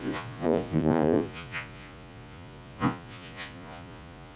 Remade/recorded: remade